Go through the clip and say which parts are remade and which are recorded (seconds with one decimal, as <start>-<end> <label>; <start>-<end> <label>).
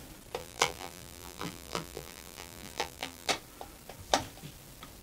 0.0-0.4 recorded; 0.4-3.3 remade; 3.3-5.0 recorded